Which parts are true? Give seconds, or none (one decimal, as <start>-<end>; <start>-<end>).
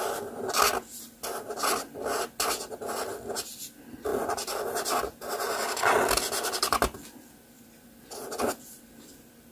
0.0-9.5